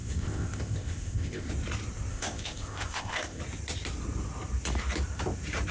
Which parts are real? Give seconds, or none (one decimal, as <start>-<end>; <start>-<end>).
1.5-2.1; 3.4-5.7